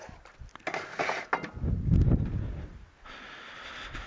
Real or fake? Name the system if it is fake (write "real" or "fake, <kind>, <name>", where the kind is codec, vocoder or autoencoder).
real